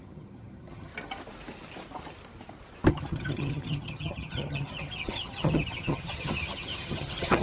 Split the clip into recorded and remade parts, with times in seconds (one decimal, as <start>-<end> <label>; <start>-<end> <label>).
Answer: 0.0-0.9 remade; 0.9-2.9 recorded; 2.9-7.4 remade